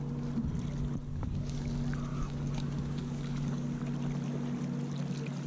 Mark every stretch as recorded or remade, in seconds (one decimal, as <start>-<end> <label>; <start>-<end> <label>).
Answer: 0.0-1.1 recorded; 1.1-1.7 remade; 1.7-2.1 recorded; 2.1-3.8 remade; 3.8-5.5 recorded